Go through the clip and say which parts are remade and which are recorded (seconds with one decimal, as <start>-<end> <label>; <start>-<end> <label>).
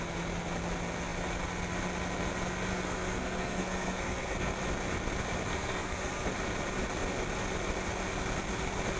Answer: 0.0-2.7 recorded; 2.7-4.5 remade; 4.5-5.5 recorded; 5.5-6.3 remade; 6.3-9.0 recorded